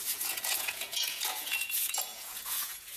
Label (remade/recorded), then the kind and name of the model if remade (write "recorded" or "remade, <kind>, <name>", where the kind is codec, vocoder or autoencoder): remade, vocoder, Vocos